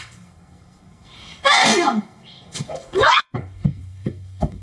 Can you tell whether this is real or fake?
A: fake